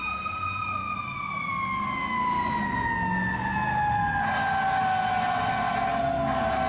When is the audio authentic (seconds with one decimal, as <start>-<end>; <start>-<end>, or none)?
0.0-6.7